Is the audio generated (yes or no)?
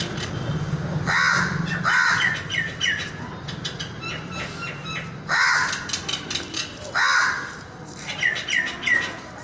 no